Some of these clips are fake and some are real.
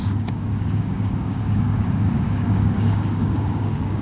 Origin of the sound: fake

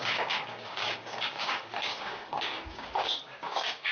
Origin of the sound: fake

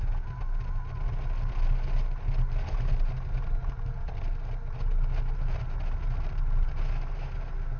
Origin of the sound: real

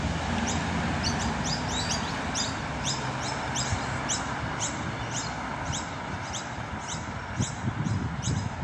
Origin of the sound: real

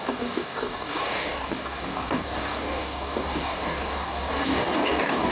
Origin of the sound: fake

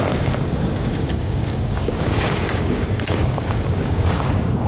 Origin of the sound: fake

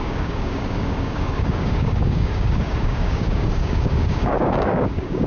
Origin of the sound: fake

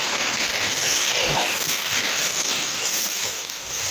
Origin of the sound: fake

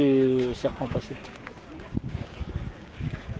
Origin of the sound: fake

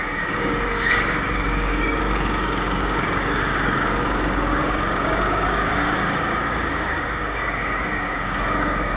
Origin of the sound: fake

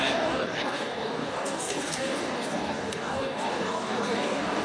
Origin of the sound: fake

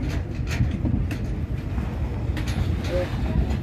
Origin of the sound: real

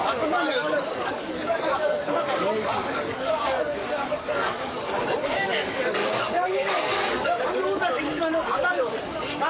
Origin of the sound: fake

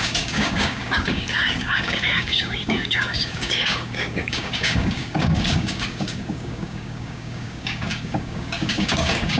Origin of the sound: fake